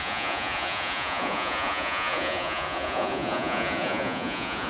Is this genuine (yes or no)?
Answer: no